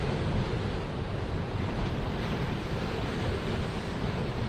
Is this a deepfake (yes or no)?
yes